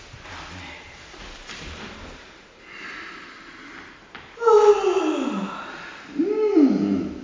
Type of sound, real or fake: real